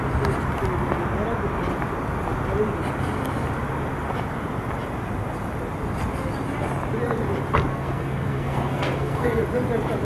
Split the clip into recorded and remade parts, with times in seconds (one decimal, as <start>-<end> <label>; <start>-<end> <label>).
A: 0.0-7.7 recorded; 7.7-9.4 remade; 9.4-10.0 recorded